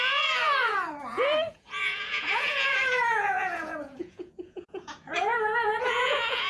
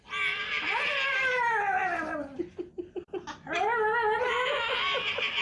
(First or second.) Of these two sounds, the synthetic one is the first